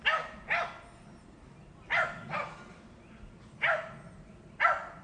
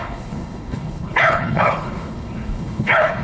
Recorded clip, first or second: first